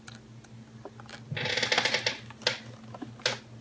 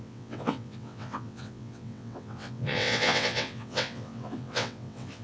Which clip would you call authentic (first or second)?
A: first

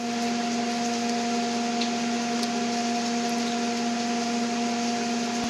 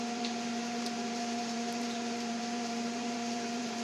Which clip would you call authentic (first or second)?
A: first